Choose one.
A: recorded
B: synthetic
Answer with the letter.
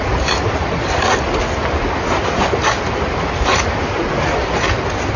A